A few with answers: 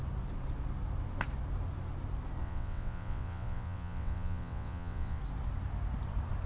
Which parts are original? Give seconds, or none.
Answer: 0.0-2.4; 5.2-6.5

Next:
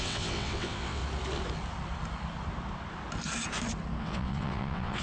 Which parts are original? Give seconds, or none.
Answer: 1.0-4.0

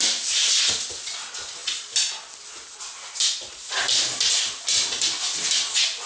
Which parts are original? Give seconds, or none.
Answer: 0.0-6.1